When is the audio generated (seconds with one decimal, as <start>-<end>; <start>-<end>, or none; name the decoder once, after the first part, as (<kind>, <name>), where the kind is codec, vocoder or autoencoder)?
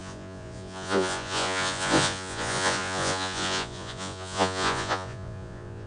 0.0-5.9 (vocoder, Vocos)